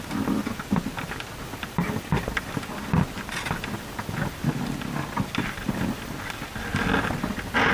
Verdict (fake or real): real